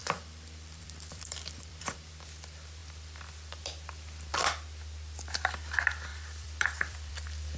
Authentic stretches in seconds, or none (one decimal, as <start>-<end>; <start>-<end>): 2.1-6.1; 7.1-7.6

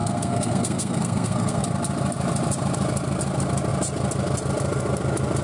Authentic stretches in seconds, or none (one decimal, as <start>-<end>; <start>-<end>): 1.6-5.4

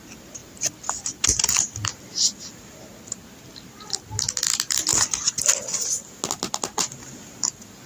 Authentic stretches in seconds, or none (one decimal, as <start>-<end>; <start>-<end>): 0.0-0.4; 2.0-4.9; 5.4-7.9